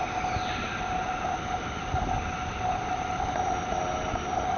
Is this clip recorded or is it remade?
recorded